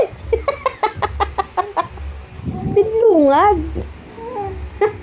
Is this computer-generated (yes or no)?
no